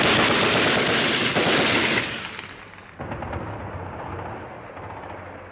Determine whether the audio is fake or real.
real